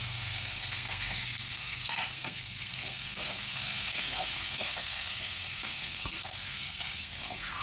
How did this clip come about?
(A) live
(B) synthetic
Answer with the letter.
B